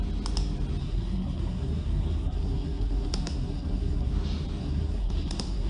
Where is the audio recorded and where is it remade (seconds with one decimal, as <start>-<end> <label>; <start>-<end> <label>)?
0.0-0.8 recorded; 0.8-4.1 remade; 4.1-4.6 recorded; 4.6-5.7 remade